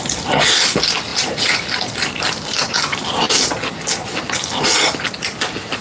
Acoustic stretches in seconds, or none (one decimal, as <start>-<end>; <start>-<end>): 0.0-5.8